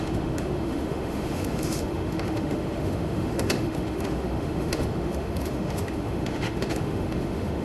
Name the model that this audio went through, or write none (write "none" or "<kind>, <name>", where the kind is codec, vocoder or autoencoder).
autoencoder, DAC-VAE